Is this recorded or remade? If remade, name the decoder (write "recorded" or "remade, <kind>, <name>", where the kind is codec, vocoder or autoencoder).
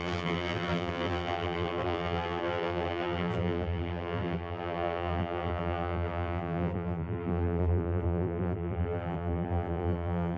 remade, vocoder, BigVGAN v2